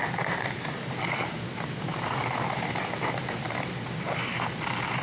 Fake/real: real